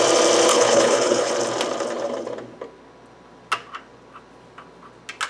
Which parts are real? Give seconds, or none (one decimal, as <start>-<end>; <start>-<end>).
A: 0.0-0.5; 1.3-5.3